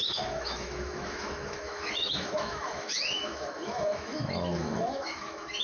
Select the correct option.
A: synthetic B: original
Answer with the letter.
A